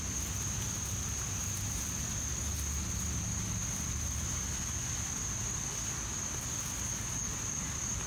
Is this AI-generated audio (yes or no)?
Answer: no